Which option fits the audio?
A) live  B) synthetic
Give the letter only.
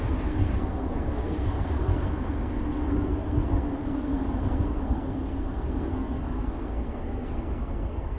B